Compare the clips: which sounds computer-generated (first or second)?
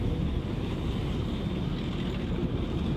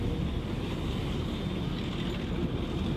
first